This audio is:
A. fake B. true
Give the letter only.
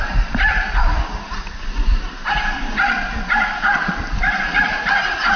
A